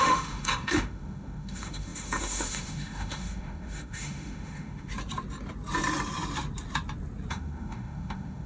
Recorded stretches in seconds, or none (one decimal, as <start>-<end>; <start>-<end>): 4.9-7.3